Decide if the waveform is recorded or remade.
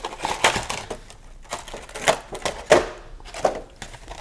recorded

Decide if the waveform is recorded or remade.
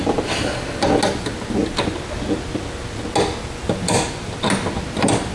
recorded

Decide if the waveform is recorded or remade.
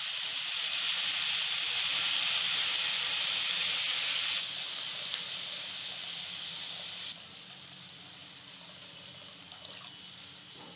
recorded